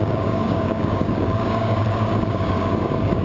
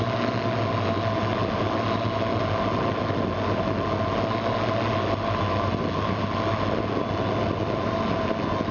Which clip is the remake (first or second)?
first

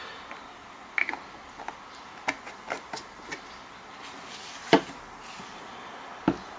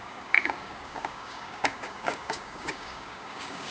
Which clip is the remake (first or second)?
second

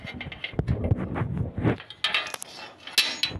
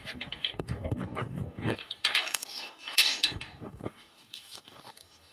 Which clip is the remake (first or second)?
second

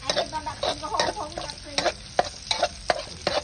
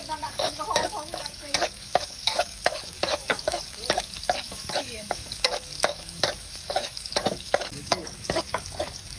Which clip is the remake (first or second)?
second